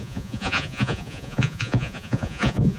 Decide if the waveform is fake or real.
fake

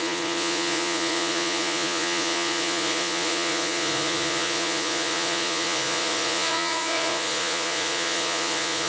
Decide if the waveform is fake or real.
fake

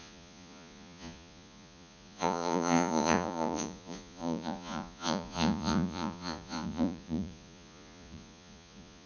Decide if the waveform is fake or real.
fake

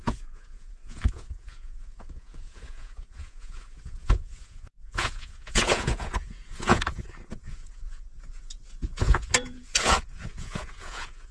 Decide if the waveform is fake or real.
fake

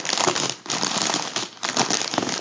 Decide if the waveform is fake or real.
real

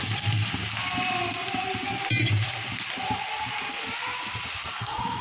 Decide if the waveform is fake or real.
real